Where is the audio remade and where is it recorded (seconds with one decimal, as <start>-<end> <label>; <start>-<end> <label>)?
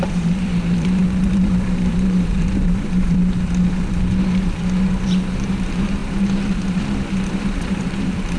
0.0-3.2 remade; 3.2-3.7 recorded; 3.7-8.4 remade